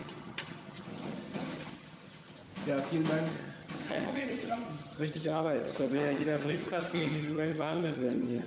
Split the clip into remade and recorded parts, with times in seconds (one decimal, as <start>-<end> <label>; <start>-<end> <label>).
0.0-2.4 remade; 2.4-3.3 recorded; 3.3-8.5 remade